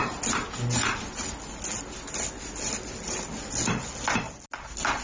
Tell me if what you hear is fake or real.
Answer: real